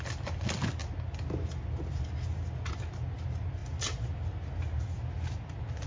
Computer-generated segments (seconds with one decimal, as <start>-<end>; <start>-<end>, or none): none